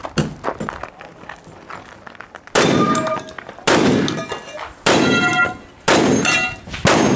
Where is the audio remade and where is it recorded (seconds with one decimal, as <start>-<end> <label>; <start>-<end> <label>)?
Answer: 0.0-7.2 recorded